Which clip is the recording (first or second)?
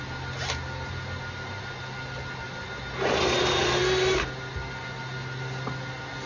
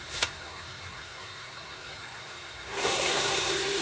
first